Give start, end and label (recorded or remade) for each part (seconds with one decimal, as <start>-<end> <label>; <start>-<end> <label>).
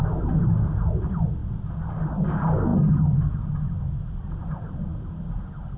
0.0-5.8 recorded